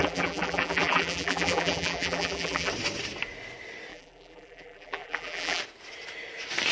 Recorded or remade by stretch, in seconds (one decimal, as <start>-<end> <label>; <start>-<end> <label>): 0.0-2.7 remade; 2.7-3.9 recorded; 3.9-5.6 remade; 5.6-6.7 recorded